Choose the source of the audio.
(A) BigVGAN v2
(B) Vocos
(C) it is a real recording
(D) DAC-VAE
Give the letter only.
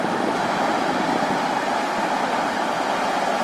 C